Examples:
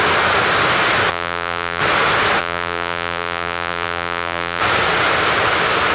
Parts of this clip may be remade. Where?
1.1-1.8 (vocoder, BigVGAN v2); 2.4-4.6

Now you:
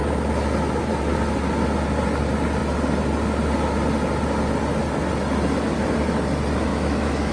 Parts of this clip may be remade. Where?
6.7-7.3 (autoencoder, DAC-VAE)